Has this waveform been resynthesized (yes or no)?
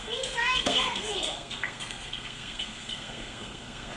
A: yes